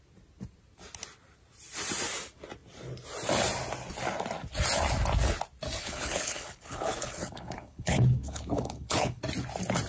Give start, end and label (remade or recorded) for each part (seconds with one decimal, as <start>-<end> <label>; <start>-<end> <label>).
0.0-5.8 recorded; 5.8-9.2 remade; 9.2-9.9 recorded